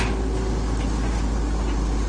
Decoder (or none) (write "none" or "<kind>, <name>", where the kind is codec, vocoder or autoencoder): none